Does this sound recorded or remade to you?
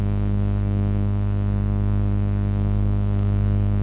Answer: remade